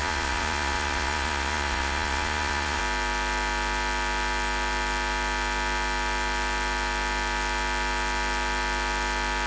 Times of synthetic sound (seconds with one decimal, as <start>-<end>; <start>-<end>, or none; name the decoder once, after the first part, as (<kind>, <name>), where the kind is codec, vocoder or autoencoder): 0.0-2.8 (vocoder, Vocos)